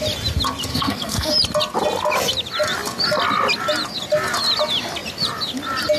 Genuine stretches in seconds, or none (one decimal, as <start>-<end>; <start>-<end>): 0.0-0.7; 1.3-6.0